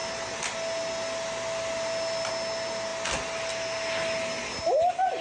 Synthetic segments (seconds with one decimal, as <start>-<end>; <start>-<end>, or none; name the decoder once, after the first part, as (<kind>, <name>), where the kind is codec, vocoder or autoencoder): none